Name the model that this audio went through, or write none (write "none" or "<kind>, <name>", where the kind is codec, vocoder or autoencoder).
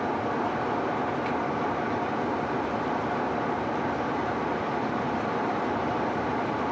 none